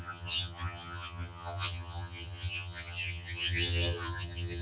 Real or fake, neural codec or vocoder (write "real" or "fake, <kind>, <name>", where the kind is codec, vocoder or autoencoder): fake, vocoder, HiFi-GAN